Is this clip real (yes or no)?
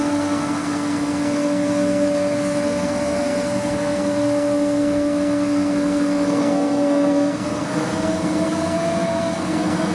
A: no